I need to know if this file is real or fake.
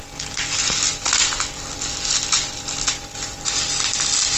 real